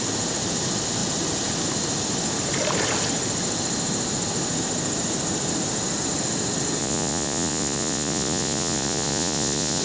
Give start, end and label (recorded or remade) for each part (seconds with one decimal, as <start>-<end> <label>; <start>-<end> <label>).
0.0-6.8 recorded; 6.8-9.8 remade